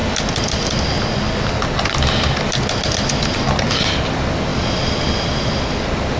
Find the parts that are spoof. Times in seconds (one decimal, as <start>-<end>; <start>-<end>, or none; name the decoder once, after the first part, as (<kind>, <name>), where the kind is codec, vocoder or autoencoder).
none